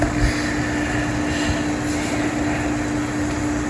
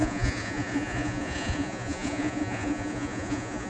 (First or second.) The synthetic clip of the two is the second